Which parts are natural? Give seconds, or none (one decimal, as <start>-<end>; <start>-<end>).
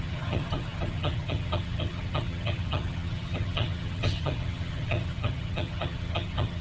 none